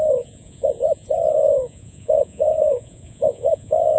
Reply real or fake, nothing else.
fake